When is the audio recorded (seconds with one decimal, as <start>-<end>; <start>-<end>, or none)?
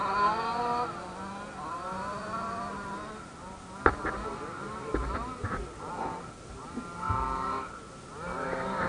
0.0-8.9